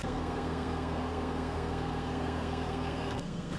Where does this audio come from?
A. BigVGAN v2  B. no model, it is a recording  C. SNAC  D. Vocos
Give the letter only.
C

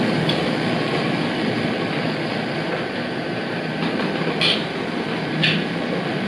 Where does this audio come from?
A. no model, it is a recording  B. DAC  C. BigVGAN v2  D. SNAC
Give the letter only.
A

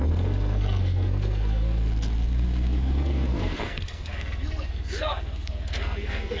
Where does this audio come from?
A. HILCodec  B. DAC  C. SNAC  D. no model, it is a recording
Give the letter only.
C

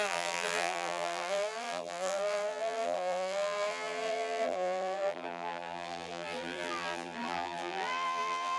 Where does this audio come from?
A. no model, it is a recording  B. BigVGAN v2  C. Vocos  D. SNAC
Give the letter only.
B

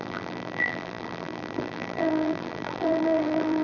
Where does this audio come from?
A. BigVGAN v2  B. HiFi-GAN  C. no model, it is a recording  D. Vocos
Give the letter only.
A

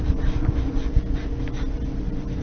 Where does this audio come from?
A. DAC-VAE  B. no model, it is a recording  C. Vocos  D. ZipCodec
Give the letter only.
B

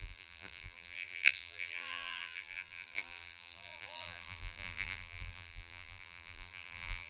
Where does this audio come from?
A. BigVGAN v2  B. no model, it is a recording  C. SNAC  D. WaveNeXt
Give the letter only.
A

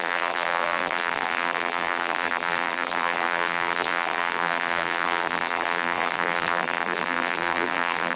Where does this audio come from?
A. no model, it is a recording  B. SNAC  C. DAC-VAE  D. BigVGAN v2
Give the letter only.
D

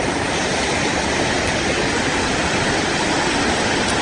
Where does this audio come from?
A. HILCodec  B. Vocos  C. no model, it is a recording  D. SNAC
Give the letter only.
C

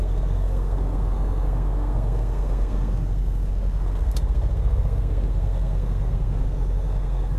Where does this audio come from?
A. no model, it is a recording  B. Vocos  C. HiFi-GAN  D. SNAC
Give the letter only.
D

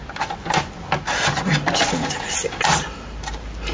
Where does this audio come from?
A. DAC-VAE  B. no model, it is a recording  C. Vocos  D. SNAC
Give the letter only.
B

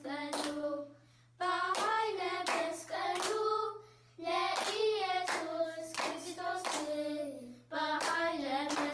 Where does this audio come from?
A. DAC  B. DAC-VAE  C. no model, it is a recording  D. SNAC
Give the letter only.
C